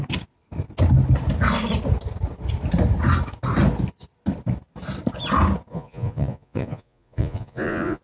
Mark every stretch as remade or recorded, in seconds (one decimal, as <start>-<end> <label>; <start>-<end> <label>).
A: 0.0-5.7 recorded; 5.7-8.0 remade